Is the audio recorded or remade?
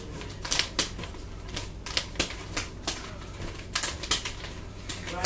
recorded